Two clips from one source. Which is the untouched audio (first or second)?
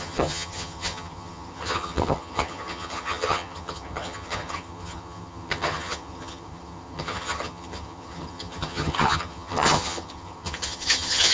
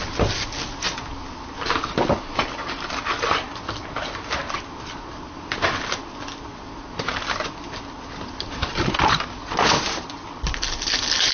second